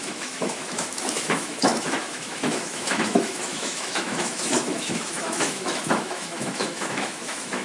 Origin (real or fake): fake